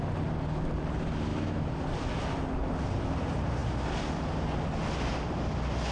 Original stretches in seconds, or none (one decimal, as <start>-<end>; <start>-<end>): 0.0-1.3; 1.8-5.9